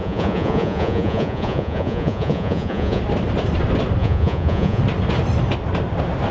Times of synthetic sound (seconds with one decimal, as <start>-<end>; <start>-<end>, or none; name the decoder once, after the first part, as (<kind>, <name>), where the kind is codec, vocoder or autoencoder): 0.0-3.0 (vocoder, Vocos); 4.0-4.8